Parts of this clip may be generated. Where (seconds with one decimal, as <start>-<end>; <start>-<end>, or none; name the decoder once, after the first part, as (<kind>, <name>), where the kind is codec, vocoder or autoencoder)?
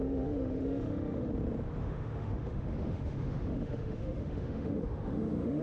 0.0-1.3 (autoencoder, DAC-VAE); 1.8-5.6